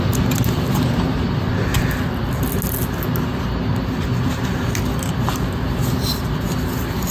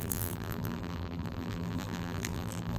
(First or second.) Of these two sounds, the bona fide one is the first